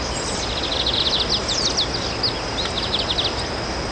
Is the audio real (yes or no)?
yes